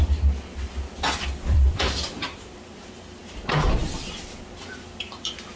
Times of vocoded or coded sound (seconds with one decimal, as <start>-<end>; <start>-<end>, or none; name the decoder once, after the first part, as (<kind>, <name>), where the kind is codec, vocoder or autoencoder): 1.5-3.2 (vocoder, BigVGAN v2); 5.0-5.6